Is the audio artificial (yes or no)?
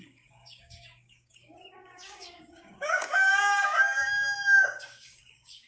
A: yes